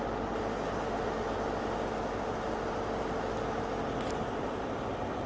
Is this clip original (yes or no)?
yes